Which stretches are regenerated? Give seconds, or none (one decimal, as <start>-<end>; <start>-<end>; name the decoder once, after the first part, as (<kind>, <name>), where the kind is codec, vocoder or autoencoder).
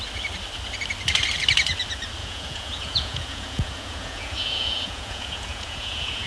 2.2-6.3 (vocoder, Vocos)